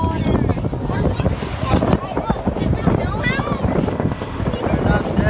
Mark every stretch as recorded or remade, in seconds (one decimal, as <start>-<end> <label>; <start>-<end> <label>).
0.0-3.9 recorded; 3.9-4.4 remade; 4.4-5.3 recorded